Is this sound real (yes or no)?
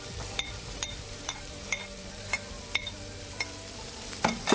no